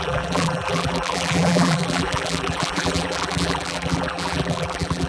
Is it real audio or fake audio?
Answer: fake